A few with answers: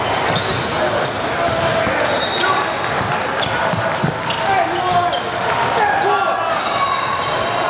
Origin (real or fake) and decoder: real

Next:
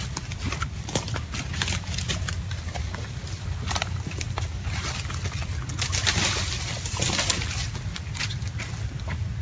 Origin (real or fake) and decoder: real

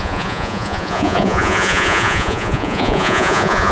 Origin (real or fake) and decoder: fake, vocoder, Vocos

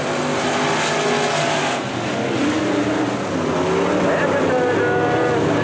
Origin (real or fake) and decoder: real